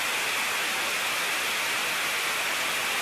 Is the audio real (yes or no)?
yes